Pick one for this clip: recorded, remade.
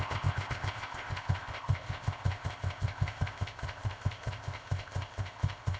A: remade